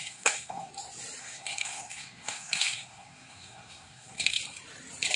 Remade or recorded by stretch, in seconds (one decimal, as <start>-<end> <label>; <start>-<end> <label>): 0.0-0.7 remade; 0.7-1.2 recorded; 1.2-4.4 remade; 4.4-5.2 recorded